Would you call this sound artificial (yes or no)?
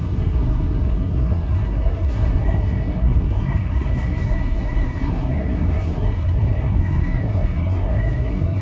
yes